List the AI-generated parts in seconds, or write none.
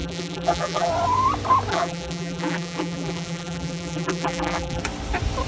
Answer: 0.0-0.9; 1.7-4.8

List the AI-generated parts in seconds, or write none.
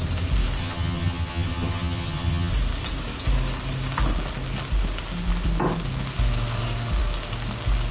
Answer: 0.6-2.5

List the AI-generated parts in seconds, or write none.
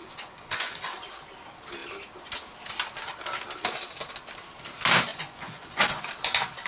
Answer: 0.0-0.9; 5.1-6.0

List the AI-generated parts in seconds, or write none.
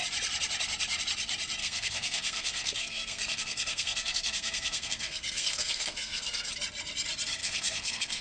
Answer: 1.6-6.5; 7.4-8.2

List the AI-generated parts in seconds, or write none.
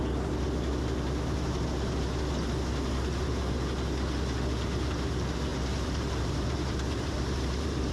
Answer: 5.5-7.9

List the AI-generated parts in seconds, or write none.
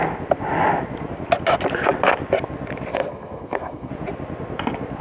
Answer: 2.9-3.9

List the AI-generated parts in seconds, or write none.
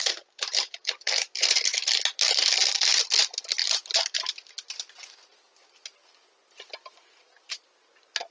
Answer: none